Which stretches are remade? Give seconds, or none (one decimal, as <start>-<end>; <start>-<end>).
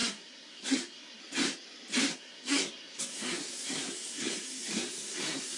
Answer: 0.0-1.2; 2.1-5.6